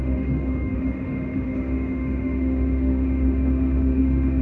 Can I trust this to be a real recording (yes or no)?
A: no